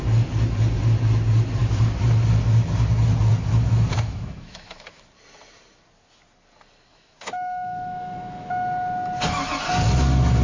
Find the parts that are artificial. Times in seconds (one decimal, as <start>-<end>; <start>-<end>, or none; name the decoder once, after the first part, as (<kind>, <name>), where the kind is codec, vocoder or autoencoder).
3.9-5.0 (autoencoder, DAC-VAE); 6.9-8.5